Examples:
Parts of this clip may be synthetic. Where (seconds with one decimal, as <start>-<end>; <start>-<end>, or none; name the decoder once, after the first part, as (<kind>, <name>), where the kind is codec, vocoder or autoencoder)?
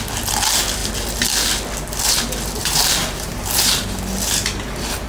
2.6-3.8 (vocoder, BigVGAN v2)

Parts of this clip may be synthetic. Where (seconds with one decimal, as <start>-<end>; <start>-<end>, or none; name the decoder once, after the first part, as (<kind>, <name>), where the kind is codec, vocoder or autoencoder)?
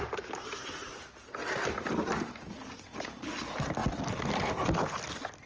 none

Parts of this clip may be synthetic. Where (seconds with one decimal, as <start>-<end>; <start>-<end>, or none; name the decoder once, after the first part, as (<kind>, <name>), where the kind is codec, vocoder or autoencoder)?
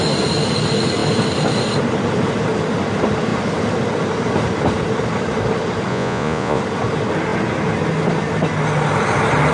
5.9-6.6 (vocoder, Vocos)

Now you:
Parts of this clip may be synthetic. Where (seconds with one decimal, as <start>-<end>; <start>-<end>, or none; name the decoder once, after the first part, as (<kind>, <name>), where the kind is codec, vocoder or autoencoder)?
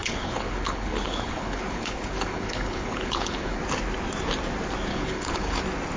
0.0-3.6 (codec, HILCodec); 4.9-5.6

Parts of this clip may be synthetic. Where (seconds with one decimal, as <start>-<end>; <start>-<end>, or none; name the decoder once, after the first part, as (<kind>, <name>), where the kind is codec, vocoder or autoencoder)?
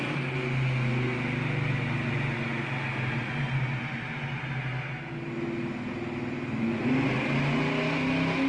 none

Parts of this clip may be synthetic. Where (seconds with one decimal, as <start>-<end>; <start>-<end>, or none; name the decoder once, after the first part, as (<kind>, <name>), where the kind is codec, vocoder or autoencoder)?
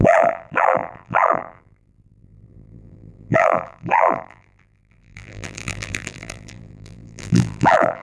0.0-8.0 (vocoder, BigVGAN v2)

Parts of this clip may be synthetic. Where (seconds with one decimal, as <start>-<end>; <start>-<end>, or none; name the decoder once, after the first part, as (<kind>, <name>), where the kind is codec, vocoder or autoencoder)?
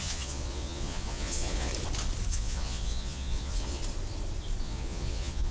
0.0-1.7 (vocoder, Vocos); 2.3-3.8; 4.6-5.5